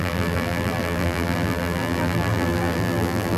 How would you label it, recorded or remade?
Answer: remade